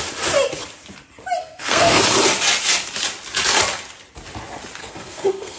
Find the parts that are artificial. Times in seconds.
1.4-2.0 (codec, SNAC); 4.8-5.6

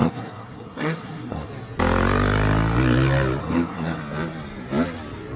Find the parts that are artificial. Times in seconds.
0.0-1.5 (codec, SNAC); 3.4-4.0